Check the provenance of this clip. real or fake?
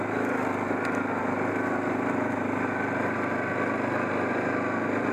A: real